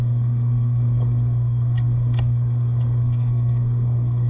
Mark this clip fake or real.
fake